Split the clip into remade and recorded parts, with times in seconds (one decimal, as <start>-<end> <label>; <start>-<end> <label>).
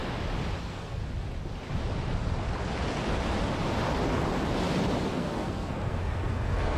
0.0-0.6 recorded; 0.6-1.0 remade; 1.0-5.1 recorded; 5.1-6.8 remade